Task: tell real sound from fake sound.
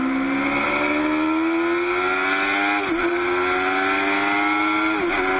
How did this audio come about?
real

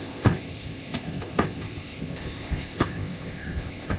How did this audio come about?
fake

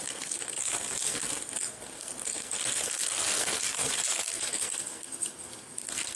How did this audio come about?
fake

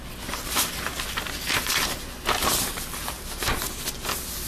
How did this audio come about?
real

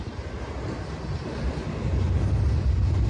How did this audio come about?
real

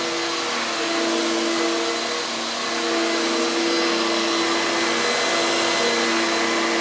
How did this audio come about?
real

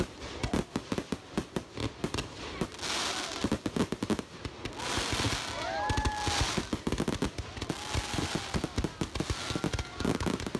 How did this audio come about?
real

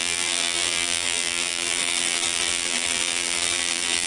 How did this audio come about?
fake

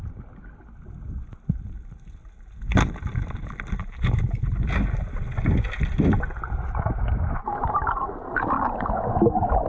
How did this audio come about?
real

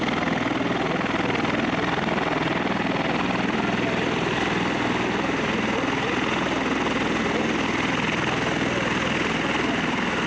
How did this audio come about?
real